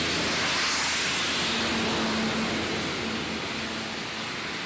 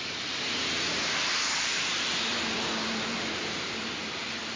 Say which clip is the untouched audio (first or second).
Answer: first